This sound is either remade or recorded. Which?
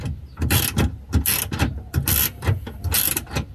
recorded